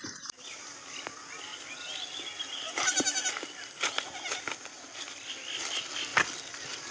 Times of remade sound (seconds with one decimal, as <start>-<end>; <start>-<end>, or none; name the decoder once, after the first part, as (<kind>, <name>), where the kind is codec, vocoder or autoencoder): none